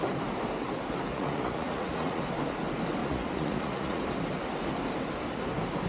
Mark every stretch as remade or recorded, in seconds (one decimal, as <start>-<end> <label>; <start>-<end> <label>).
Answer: 0.0-1.1 recorded; 1.1-2.2 remade; 2.2-3.0 recorded; 3.0-4.0 remade; 4.0-5.9 recorded

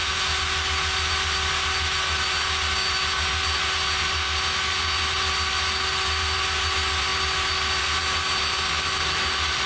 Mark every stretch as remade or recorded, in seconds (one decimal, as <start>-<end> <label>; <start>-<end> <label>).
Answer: 0.0-9.7 recorded

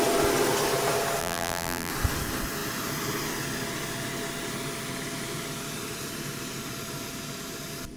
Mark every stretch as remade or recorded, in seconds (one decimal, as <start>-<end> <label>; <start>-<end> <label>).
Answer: 0.0-1.2 recorded; 1.2-1.9 remade; 1.9-8.0 recorded

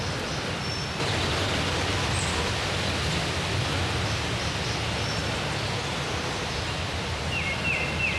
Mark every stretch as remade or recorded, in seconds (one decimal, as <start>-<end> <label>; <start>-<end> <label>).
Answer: 0.0-5.2 recorded; 5.2-7.6 remade; 7.6-8.2 recorded

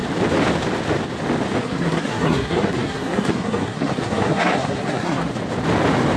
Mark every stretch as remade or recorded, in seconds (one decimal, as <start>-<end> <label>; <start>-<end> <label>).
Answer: 0.0-1.6 recorded; 1.6-5.3 remade; 5.3-6.2 recorded

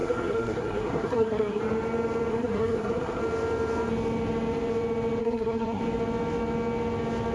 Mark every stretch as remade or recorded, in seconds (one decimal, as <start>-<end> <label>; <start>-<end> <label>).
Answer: 0.0-1.6 remade; 1.6-2.3 recorded; 2.3-3.2 remade; 3.2-5.2 recorded; 5.2-5.8 remade; 5.8-7.3 recorded